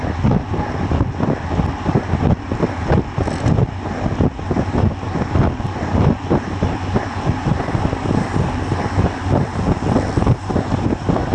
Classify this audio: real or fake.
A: real